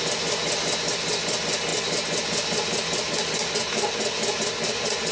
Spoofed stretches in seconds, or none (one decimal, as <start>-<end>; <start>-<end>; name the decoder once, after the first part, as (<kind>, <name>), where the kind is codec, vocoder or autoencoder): none